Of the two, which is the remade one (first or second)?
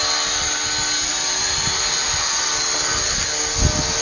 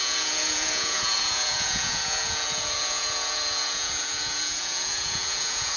second